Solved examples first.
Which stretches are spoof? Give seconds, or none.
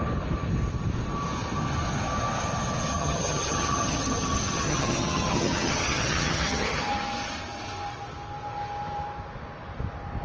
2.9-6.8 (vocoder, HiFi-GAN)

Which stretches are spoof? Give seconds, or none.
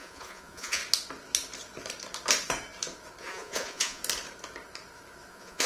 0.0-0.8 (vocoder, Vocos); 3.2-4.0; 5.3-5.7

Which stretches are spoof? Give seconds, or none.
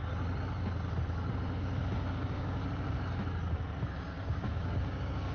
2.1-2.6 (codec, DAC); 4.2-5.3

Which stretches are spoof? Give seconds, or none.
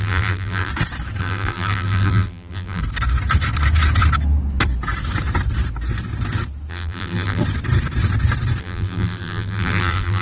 0.0-0.7 (vocoder, BigVGAN v2); 1.2-2.8; 6.7-7.4; 8.6-10.2